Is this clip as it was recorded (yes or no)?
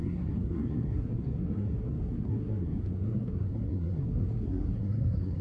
no